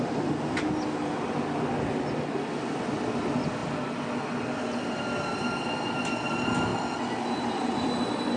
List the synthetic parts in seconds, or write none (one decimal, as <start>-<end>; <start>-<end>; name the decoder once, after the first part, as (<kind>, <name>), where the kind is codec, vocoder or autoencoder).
none